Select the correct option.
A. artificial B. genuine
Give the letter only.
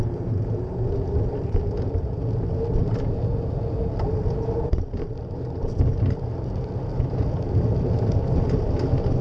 B